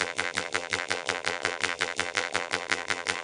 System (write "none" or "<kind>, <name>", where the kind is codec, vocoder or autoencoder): vocoder, BigVGAN v2